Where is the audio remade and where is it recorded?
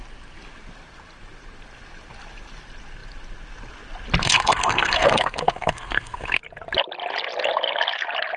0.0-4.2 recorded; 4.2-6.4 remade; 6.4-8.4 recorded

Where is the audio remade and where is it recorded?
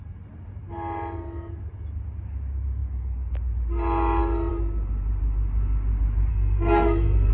0.0-6.3 recorded; 6.3-7.3 remade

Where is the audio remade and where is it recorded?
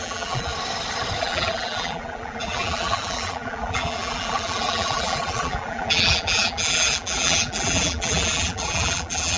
0.0-0.5 remade; 0.5-1.2 recorded; 1.2-9.4 remade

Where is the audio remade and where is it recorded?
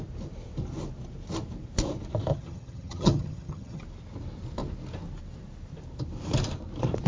0.0-2.3 recorded; 2.3-3.8 remade; 3.8-7.1 recorded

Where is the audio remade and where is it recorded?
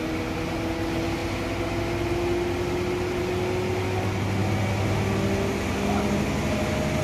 0.0-7.0 recorded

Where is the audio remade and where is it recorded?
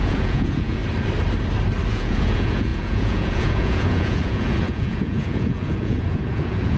0.0-0.8 remade; 0.8-1.9 recorded; 1.9-6.8 remade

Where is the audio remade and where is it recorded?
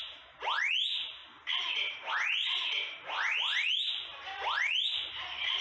0.0-5.6 recorded